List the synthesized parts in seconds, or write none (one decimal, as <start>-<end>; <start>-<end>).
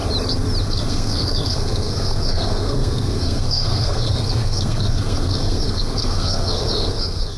0.6-7.4